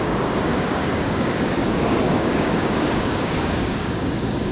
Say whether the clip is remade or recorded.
remade